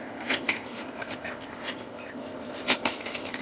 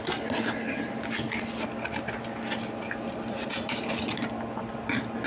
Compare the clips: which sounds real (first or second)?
second